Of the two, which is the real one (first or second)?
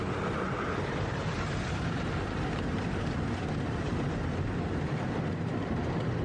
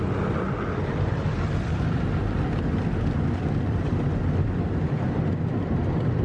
second